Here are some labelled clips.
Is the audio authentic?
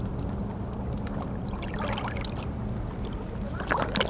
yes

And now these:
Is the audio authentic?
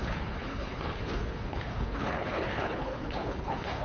no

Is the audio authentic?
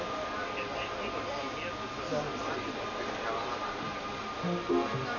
yes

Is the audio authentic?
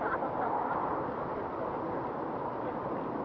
yes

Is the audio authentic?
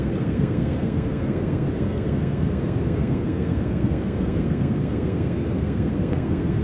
no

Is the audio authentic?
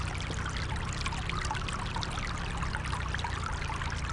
yes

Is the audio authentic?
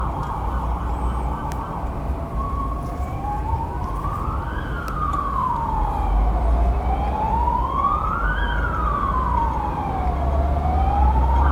yes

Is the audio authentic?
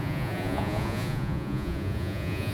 no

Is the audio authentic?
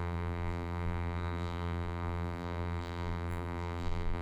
no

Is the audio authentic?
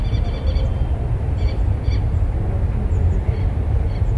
yes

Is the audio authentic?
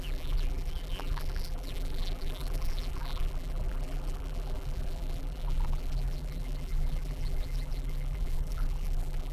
no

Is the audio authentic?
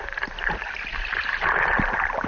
yes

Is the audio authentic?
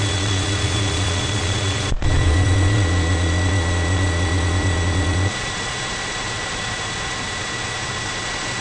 no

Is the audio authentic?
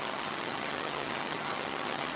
no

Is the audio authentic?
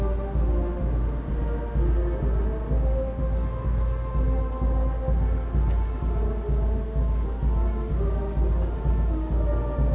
yes